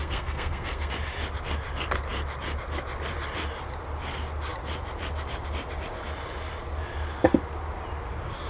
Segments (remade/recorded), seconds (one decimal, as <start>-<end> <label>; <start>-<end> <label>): 0.0-0.9 remade; 0.9-8.5 recorded